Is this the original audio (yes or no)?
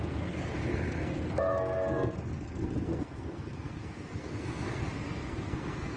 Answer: no